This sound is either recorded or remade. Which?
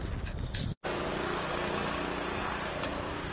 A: recorded